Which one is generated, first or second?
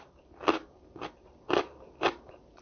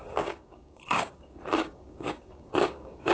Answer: second